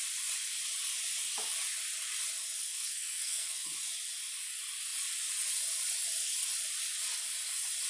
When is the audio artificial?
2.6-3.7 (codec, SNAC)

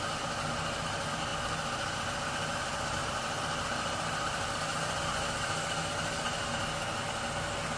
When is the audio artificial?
3.0-5.0 (vocoder, BigVGAN v2)

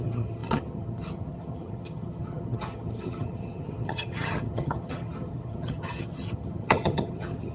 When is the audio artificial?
0.0-7.5 (vocoder, HiFi-GAN)